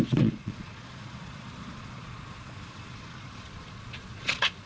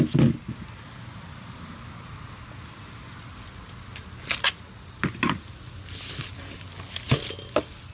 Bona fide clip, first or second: second